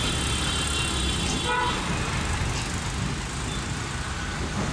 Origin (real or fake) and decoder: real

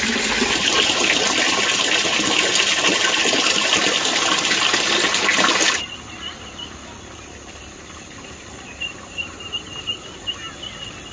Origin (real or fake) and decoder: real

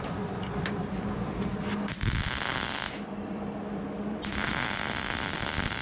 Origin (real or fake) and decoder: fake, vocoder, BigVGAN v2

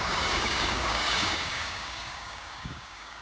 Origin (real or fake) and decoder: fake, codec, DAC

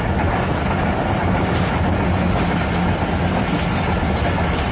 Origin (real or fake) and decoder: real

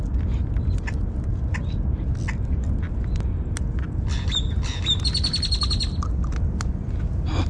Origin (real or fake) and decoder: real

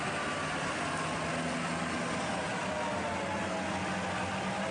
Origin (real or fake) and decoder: real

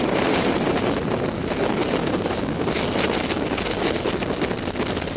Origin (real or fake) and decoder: real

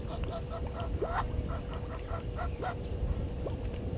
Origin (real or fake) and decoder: fake, vocoder, BigVGAN v2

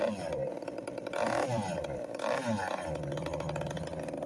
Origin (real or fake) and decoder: fake, vocoder, BigVGAN v2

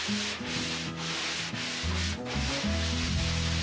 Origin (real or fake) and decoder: real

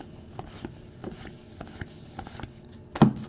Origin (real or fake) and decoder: real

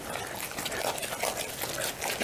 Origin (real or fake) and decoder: real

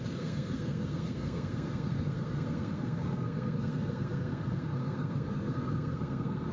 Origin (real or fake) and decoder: fake, codec, SNAC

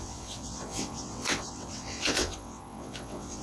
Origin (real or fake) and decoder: fake, vocoder, WaveNeXt